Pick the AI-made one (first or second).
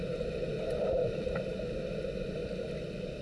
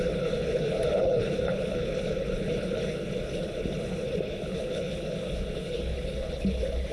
second